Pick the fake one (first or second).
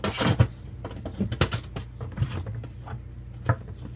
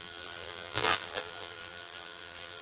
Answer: second